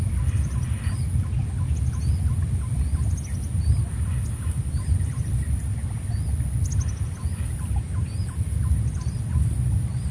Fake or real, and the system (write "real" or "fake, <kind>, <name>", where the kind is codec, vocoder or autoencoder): real